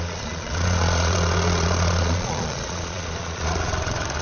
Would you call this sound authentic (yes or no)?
no